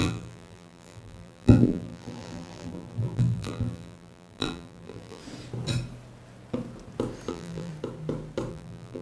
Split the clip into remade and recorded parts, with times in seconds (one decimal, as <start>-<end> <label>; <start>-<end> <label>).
0.0-5.2 remade; 5.2-7.3 recorded; 7.3-7.7 remade; 7.7-8.5 recorded; 8.5-9.0 remade